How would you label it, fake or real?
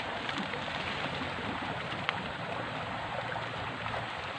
fake